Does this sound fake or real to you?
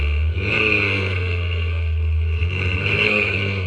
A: fake